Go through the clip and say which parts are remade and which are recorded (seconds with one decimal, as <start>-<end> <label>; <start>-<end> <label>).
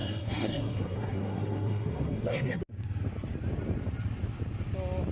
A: 0.0-2.6 remade; 2.6-5.1 recorded